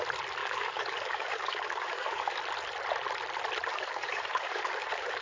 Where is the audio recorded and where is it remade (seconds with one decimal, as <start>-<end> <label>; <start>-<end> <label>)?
0.0-0.4 recorded; 0.4-2.4 remade; 2.4-3.7 recorded; 3.7-5.2 remade